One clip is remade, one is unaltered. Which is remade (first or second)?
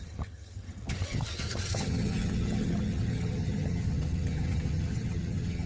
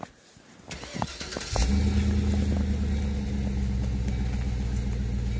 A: first